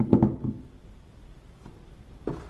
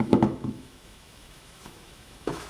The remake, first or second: second